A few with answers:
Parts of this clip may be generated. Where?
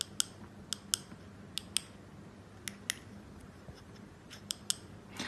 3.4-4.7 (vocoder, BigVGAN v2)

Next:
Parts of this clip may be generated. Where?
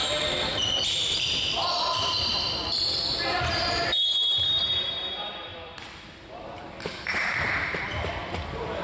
0.0-3.0 (vocoder, BigVGAN v2); 5.5-6.8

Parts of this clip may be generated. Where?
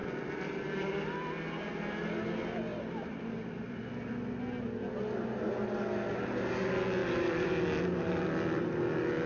0.0-0.9 (vocoder, BigVGAN v2); 2.7-4.1; 7.0-7.6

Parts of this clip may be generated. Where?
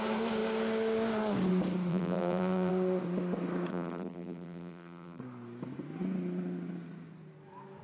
1.9-2.7 (vocoder, BigVGAN v2); 3.7-5.2